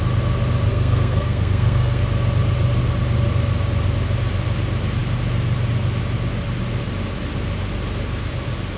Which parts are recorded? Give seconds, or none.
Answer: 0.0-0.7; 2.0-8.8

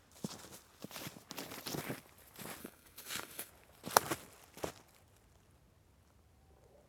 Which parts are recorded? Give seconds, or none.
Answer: 0.0-2.6; 3.5-6.9